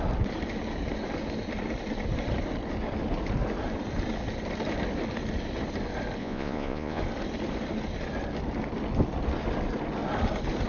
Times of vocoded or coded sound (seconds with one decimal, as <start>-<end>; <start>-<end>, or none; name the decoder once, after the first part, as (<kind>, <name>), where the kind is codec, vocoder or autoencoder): 6.2-7.0 (vocoder, Vocos)